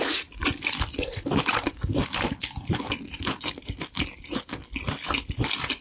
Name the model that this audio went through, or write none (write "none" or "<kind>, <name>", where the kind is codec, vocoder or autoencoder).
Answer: none